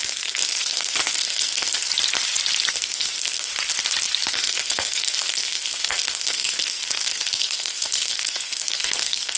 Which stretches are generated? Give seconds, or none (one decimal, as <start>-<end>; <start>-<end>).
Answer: 0.0-1.9; 2.7-3.5; 4.3-9.4

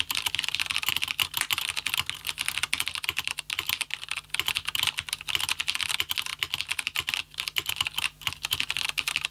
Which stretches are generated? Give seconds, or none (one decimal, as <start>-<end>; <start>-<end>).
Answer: none